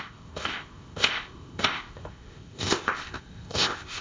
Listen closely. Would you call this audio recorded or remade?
remade